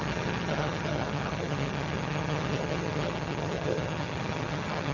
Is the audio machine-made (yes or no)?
yes